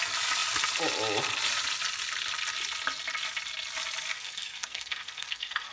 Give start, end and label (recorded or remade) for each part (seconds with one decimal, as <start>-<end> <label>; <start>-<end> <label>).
0.0-4.1 recorded; 4.1-5.7 remade